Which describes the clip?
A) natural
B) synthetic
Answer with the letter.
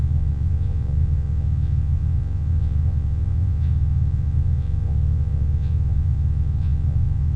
B